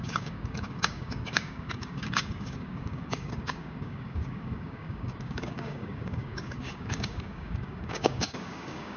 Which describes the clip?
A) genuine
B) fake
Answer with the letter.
B